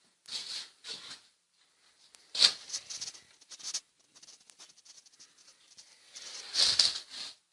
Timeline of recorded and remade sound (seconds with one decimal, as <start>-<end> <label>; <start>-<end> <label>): 0.0-5.4 recorded; 5.4-6.6 remade; 6.6-7.5 recorded